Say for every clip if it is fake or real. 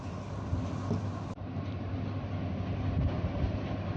real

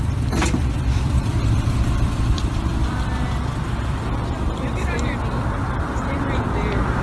fake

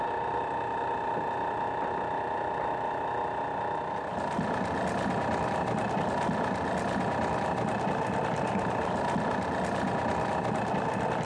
real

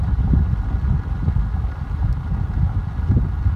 real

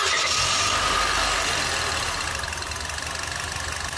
real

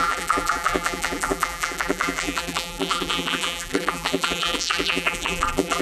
fake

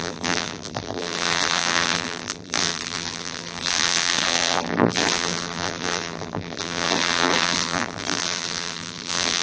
fake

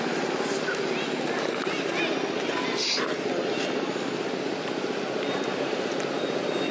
real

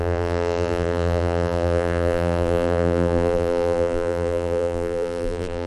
fake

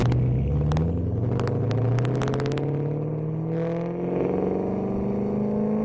real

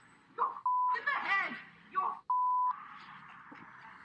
real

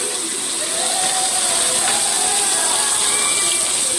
real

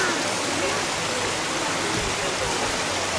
fake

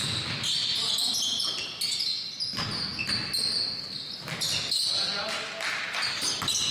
real